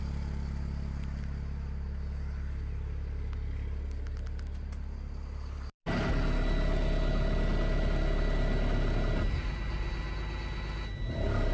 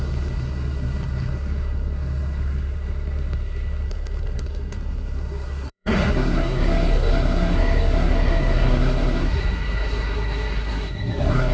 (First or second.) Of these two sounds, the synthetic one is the second